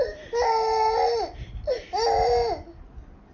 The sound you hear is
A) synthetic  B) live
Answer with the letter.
B